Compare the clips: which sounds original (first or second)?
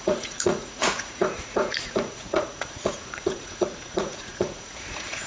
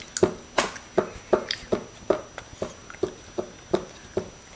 second